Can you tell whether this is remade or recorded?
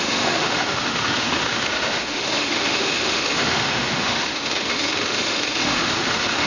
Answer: remade